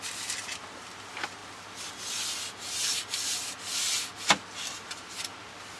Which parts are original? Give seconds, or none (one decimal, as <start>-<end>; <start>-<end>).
0.0-5.8